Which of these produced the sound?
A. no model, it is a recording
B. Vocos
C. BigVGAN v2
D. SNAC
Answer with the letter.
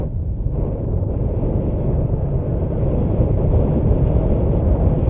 A